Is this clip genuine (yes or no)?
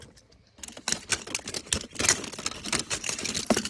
yes